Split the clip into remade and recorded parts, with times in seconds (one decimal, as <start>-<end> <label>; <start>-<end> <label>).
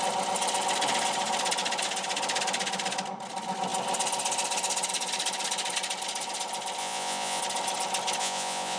0.0-6.8 recorded; 6.8-7.4 remade; 7.4-8.2 recorded; 8.2-8.8 remade